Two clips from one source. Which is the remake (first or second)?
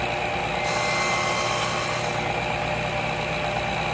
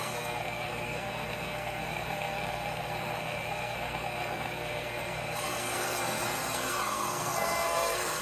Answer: second